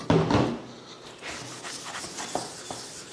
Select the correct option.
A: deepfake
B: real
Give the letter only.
B